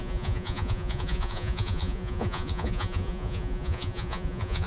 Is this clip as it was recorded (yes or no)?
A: no